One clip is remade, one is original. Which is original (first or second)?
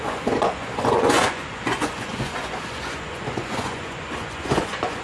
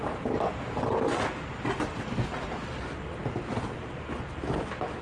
second